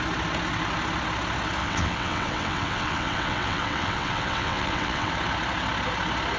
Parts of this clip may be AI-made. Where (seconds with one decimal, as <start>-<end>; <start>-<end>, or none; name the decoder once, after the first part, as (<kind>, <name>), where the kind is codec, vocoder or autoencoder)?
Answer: 1.6-5.1 (vocoder, WaveNeXt)